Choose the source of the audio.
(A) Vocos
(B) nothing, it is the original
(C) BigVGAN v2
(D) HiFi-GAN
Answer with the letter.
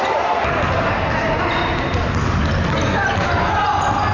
B